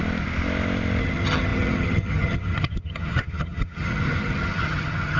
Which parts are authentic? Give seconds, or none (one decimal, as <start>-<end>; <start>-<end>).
0.0-1.0

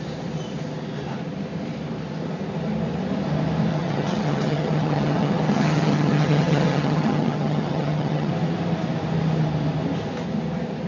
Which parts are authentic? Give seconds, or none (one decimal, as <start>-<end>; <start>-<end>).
0.0-3.7; 8.3-10.9

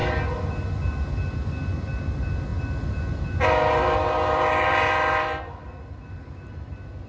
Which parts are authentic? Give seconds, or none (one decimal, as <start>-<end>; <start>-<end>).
0.0-7.1

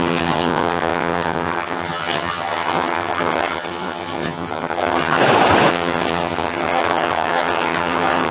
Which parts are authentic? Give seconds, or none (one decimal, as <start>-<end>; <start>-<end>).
5.2-5.7